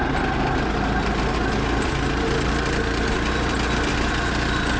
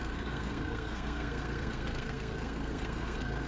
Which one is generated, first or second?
second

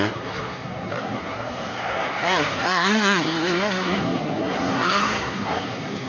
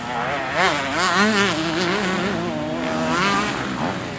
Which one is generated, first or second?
first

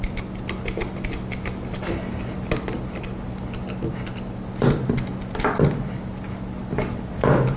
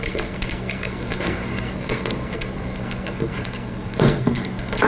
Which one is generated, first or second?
second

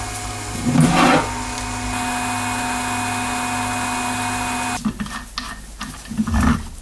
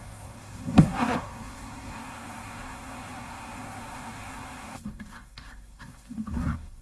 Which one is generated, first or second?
second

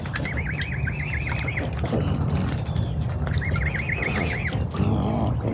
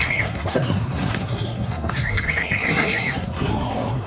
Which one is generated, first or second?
second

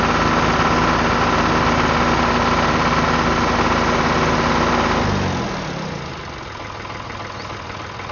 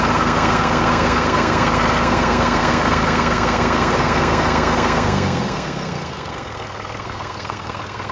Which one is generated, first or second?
second